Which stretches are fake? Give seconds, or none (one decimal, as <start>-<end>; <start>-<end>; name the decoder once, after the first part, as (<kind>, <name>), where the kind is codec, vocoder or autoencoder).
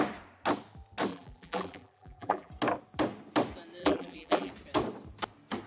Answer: 1.1-2.5 (vocoder, BigVGAN v2); 3.8-4.5